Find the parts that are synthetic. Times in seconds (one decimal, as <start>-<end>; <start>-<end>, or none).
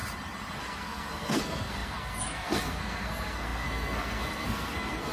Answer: 0.6-5.1